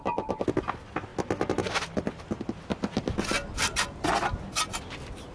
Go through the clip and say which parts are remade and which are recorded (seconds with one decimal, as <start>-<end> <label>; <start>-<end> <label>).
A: 0.0-5.3 recorded